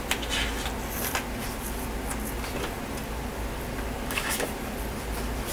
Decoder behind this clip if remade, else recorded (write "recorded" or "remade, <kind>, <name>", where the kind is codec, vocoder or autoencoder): recorded